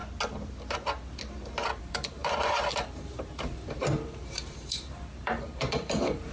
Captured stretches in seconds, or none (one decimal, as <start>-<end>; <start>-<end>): 0.0-1.8